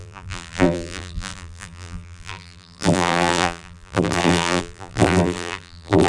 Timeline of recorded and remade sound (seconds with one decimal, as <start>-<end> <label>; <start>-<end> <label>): 0.0-6.1 remade